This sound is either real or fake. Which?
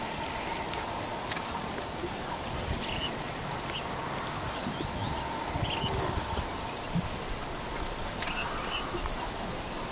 real